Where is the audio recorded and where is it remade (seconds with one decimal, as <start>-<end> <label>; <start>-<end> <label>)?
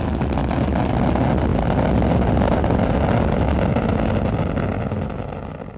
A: 0.0-5.8 recorded